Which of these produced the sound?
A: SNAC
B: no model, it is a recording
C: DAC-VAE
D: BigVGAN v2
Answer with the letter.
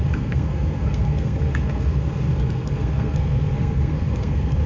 A